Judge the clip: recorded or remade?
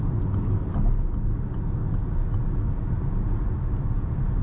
recorded